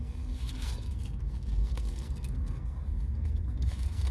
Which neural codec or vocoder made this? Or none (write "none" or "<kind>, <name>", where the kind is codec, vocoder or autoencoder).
codec, SNAC